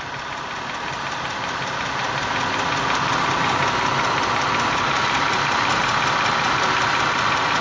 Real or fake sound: real